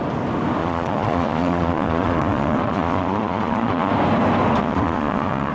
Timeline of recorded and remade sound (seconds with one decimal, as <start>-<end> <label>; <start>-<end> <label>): 0.0-0.6 recorded; 0.6-3.9 remade; 3.9-4.6 recorded; 4.6-5.5 remade